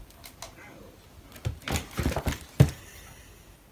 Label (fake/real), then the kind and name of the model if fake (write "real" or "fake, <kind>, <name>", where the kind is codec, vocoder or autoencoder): real